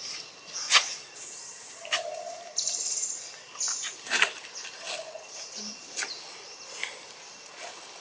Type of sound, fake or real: real